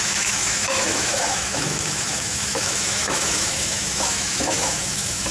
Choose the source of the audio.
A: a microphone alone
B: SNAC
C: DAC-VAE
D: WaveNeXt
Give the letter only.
C